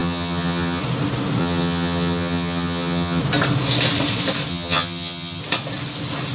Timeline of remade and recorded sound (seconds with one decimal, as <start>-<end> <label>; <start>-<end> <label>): 0.0-0.8 remade; 0.8-1.4 recorded; 1.4-3.2 remade; 3.2-4.5 recorded; 4.5-5.4 remade; 5.4-6.3 recorded